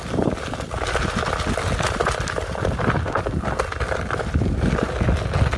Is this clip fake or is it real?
real